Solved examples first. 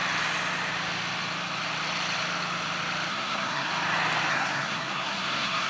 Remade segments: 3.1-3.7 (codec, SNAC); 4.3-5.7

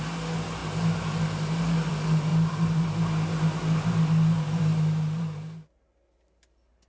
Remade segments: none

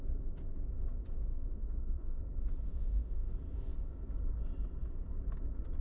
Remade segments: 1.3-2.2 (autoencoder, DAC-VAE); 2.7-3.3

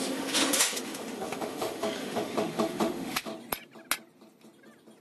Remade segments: 0.0-3.3 (autoencoder, DAC-VAE)

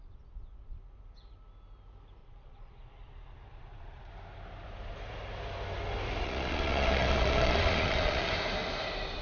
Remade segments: 2.2-4.1 (vocoder, Vocos); 6.2-8.3

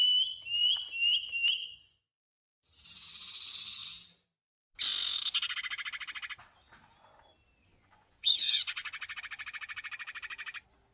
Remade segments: 1.6-2.3 (vocoder, Vocos); 7.7-9.2